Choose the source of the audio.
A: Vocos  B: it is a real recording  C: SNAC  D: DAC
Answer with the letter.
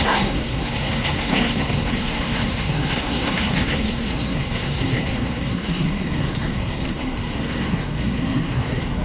C